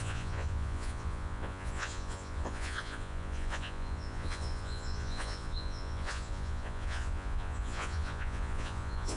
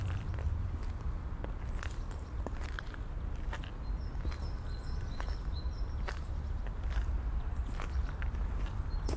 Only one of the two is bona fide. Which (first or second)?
second